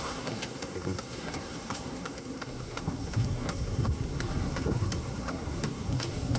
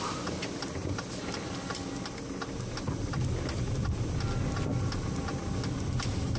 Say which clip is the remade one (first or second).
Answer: first